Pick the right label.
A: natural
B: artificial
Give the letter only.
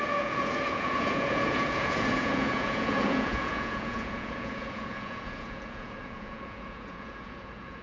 B